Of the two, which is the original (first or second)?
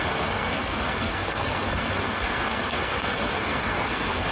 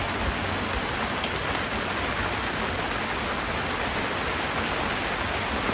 second